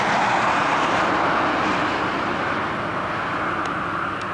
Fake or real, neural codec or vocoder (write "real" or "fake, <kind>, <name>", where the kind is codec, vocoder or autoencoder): real